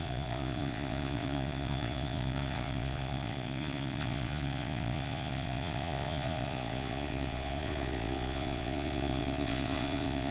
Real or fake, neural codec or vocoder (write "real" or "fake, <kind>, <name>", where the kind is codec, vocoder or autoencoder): fake, vocoder, Vocos